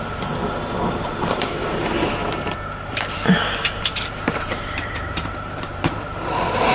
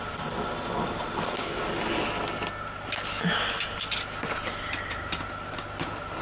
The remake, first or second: first